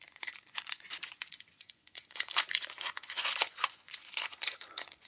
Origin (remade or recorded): remade